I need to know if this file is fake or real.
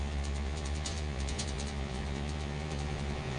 fake